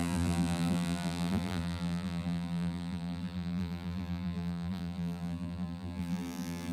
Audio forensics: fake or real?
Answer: fake